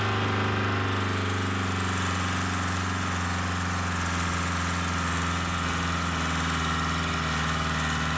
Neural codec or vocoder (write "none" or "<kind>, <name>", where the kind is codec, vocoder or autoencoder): none